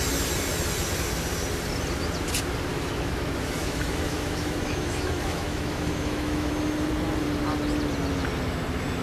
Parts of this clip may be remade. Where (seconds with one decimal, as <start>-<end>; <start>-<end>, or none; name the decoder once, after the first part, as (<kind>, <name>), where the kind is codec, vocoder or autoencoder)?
2.7-6.5 (autoencoder, DAC-VAE)